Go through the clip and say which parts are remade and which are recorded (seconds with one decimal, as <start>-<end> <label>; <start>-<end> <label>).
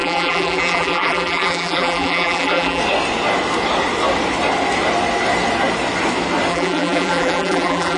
0.0-2.8 remade; 2.8-6.5 recorded; 6.5-8.0 remade